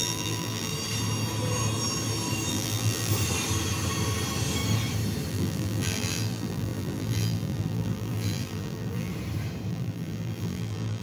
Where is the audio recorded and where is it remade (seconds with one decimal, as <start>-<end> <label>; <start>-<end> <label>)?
0.0-0.7 remade; 0.7-2.5 recorded; 2.5-3.1 remade; 3.1-5.3 recorded; 5.3-9.1 remade; 9.1-9.7 recorded; 9.7-11.0 remade